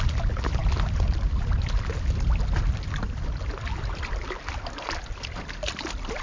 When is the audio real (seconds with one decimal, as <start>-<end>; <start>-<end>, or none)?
0.0-6.2